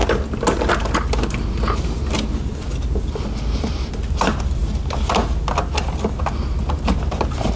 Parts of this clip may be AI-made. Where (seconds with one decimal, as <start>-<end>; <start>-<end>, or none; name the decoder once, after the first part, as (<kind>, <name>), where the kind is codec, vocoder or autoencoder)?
none